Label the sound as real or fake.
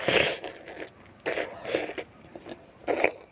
real